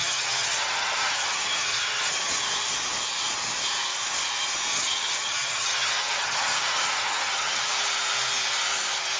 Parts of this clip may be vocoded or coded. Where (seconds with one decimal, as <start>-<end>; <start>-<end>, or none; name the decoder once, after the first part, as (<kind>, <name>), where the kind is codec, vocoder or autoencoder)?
0.0-2.3 (vocoder, HiFi-GAN); 4.7-7.6